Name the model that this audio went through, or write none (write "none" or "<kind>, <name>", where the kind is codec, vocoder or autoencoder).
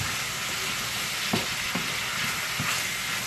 none